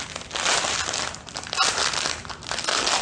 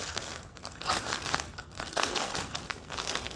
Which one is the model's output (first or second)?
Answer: second